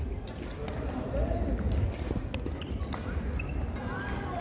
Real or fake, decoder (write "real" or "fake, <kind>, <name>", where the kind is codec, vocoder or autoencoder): real